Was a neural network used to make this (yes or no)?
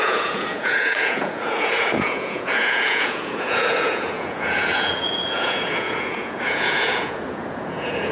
yes